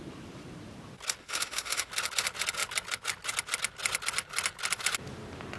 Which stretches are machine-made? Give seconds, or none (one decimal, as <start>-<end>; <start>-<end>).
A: 1.2-1.9